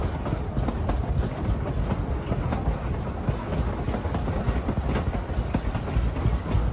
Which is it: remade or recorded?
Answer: recorded